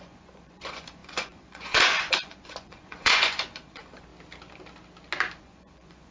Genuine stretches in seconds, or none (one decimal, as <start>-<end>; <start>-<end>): 4.1-5.4